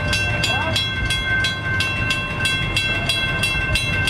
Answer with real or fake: real